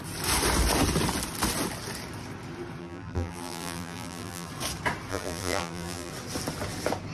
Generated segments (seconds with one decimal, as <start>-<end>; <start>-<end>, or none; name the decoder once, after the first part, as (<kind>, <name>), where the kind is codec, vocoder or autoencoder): 2.8-4.5 (vocoder, BigVGAN v2); 5.1-6.1